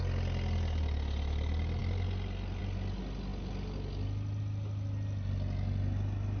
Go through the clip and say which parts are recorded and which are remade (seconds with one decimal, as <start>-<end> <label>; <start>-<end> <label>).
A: 0.0-6.4 recorded